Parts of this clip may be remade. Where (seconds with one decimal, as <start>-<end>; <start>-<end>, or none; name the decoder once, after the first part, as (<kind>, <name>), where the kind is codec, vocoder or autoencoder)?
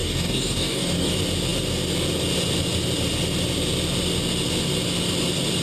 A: 0.0-1.1 (codec, DAC)